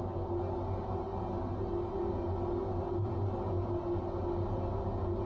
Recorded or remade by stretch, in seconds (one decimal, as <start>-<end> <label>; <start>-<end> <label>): 0.0-5.2 recorded

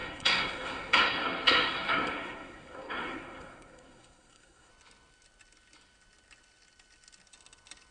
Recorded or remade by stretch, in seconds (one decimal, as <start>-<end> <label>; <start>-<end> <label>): 0.0-4.7 remade; 4.7-7.9 recorded

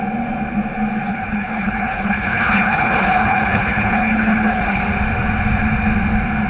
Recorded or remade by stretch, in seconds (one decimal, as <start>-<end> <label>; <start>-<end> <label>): 0.0-1.1 recorded; 1.1-4.8 remade; 4.8-6.5 recorded

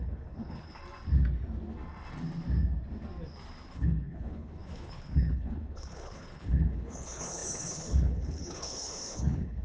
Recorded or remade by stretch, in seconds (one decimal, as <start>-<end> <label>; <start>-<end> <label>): 0.0-0.8 remade; 0.8-3.7 recorded; 3.7-9.6 remade

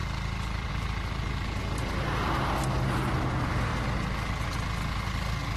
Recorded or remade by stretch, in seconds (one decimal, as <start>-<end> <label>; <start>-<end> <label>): 0.0-0.7 remade; 0.7-5.6 recorded